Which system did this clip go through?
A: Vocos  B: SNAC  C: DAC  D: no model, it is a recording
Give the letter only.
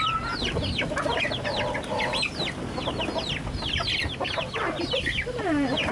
D